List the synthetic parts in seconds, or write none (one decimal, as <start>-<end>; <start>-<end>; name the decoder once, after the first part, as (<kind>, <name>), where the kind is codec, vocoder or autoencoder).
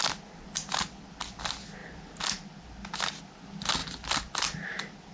none